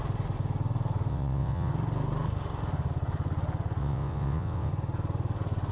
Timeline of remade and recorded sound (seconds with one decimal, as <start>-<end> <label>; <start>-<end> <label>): 0.0-1.1 recorded; 1.1-1.7 remade; 1.7-3.8 recorded; 3.8-4.7 remade; 4.7-5.7 recorded